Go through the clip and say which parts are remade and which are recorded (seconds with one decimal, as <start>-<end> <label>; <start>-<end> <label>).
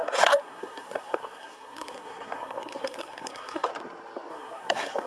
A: 0.0-3.7 remade; 3.7-4.3 recorded; 4.3-5.1 remade